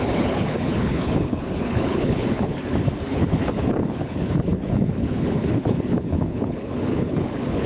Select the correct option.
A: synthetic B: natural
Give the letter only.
A